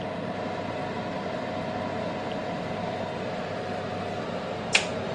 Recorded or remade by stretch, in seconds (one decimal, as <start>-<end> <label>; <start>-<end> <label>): 0.0-5.1 recorded